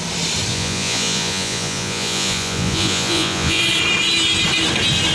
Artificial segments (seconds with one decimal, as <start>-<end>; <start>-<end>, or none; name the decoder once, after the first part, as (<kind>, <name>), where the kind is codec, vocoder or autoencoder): 0.5-3.6 (vocoder, Vocos)